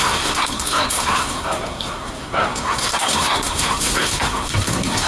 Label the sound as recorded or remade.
remade